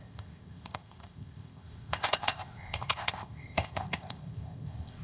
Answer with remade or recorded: remade